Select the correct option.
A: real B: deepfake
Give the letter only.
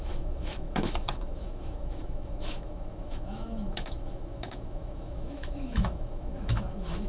B